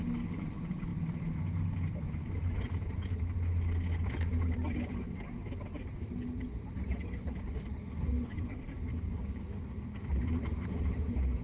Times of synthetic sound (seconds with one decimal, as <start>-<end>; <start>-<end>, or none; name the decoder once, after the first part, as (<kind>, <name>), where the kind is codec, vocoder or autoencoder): 8.9-10.1 (codec, DAC)